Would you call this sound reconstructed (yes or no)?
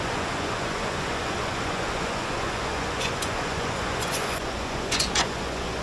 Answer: yes